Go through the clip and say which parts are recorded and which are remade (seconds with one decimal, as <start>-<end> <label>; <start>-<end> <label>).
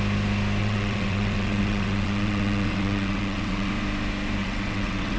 0.0-0.6 recorded; 0.6-3.7 remade; 3.7-4.4 recorded; 4.4-5.2 remade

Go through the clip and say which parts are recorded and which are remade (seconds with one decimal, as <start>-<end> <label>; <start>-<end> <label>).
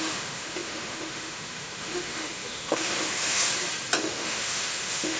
0.0-3.5 remade; 3.5-4.0 recorded; 4.0-5.2 remade